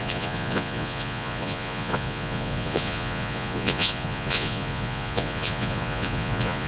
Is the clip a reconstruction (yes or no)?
yes